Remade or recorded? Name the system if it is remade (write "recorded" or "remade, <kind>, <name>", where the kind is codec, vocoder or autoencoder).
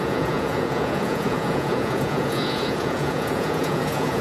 remade, vocoder, Vocos